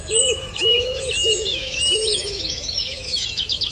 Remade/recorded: remade